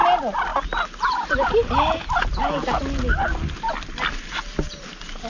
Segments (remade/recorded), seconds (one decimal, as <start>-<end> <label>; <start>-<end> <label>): 0.0-5.3 recorded